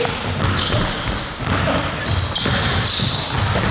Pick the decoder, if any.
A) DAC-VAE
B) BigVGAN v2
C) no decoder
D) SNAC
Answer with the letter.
C